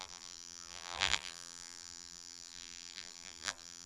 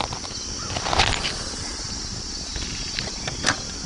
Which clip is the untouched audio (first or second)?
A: second